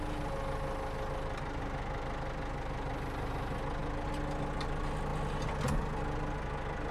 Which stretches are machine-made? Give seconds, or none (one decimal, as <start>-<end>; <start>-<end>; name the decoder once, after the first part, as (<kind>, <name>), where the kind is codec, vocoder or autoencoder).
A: none